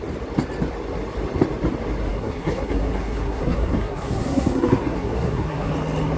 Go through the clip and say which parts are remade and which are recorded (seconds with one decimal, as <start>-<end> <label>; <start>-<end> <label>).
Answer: 0.0-2.1 recorded; 2.1-5.7 remade; 5.7-6.2 recorded